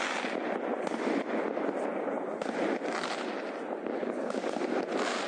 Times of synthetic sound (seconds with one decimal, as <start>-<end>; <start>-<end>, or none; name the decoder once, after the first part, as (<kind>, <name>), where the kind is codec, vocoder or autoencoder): 4.0-4.6 (codec, DAC)